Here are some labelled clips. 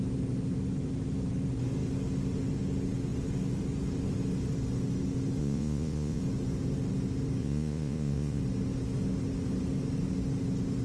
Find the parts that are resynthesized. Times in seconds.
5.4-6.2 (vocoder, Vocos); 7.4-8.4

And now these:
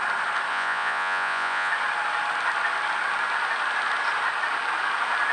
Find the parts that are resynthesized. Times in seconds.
0.5-1.7 (vocoder, Vocos)

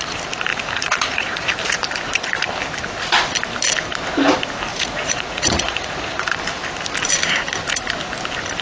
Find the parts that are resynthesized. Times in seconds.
0.5-1.5 (vocoder, Vocos); 4.7-6.3